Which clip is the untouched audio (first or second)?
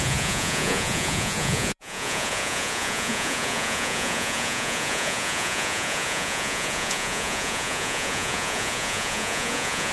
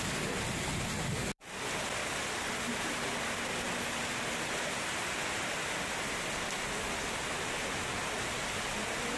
second